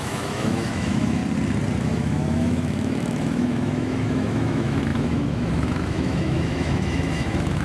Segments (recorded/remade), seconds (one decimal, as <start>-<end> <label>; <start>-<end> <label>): 0.0-1.2 remade; 1.2-1.8 recorded; 1.8-7.6 remade